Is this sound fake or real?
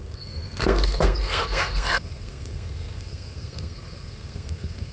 fake